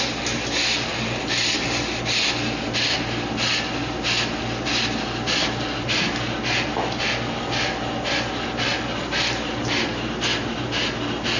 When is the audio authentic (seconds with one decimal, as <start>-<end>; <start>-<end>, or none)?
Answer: 0.0-11.4